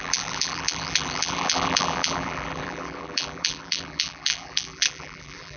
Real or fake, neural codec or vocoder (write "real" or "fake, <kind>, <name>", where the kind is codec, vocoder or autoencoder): fake, vocoder, BigVGAN v2